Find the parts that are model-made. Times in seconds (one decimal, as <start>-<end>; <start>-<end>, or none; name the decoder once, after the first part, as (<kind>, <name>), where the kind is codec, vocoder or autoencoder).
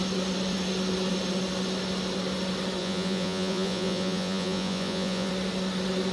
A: 2.8-5.3 (vocoder, Vocos)